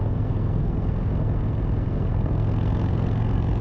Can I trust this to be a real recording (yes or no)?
no